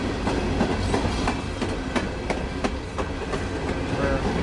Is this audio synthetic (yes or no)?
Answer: no